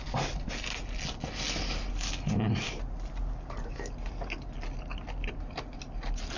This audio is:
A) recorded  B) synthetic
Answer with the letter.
A